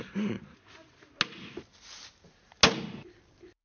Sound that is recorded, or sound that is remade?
recorded